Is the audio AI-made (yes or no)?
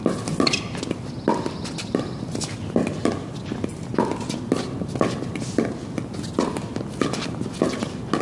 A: no